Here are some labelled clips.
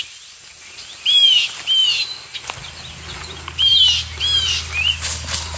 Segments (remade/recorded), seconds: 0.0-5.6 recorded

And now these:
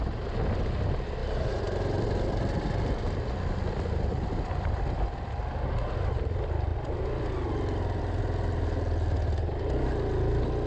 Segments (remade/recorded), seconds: 0.0-1.2 recorded; 1.2-5.4 remade; 5.4-6.7 recorded; 6.7-8.2 remade; 8.2-10.7 recorded

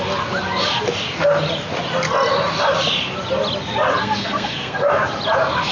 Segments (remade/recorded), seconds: 0.0-4.0 recorded; 4.0-4.9 remade; 4.9-5.7 recorded

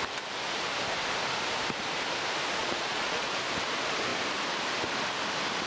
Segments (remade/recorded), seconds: 0.0-2.6 recorded; 2.6-3.3 remade; 3.3-5.7 recorded